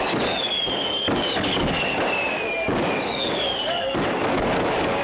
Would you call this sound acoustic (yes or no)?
no